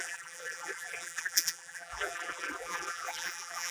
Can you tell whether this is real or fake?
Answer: fake